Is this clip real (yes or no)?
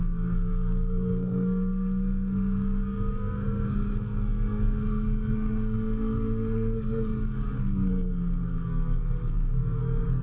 no